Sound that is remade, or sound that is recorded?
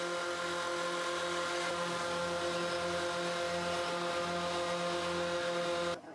recorded